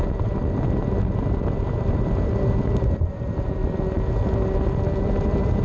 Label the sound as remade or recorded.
recorded